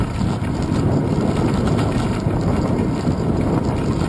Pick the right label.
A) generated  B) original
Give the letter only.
B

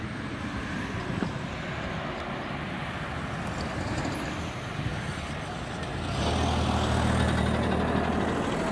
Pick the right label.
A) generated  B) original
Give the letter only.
B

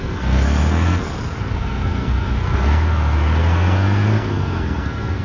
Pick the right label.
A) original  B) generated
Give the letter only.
B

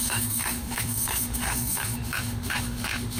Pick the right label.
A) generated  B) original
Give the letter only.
A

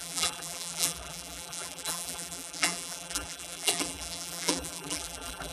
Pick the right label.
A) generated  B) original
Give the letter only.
A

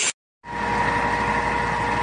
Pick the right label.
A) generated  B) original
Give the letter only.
B